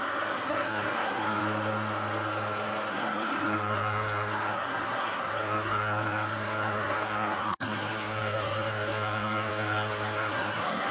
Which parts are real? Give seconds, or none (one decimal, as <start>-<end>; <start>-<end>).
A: 1.4-2.9